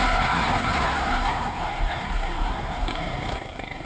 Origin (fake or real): fake